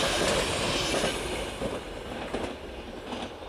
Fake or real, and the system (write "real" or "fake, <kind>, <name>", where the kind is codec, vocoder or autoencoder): real